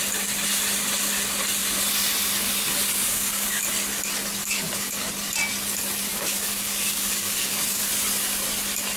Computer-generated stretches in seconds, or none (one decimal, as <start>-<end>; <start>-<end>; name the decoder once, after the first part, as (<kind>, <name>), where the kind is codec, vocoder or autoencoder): 3.1-3.6 (codec, DAC); 4.4-5.1; 6.1-7.9